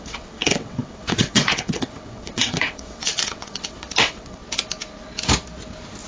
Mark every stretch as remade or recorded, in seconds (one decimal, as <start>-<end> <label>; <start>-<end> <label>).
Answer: 0.0-4.4 remade; 4.4-6.1 recorded